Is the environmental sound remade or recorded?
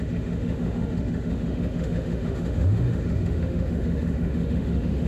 remade